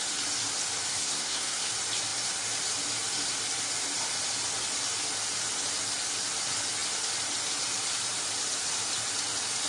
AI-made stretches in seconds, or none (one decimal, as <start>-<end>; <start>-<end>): 0.9-1.7